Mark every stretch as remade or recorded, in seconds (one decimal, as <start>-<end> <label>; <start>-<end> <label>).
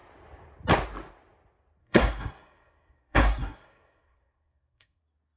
0.0-1.8 recorded; 1.8-5.0 remade; 5.0-5.4 recorded